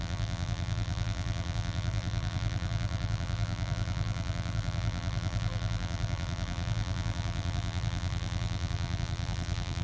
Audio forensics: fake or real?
fake